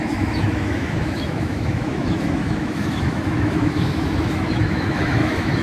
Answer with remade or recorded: remade